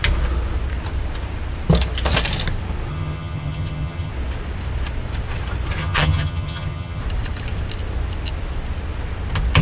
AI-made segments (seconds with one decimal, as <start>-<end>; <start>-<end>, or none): 2.9-4.1; 5.8-7.0